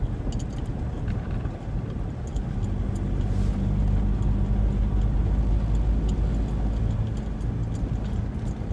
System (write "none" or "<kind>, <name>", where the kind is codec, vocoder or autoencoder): none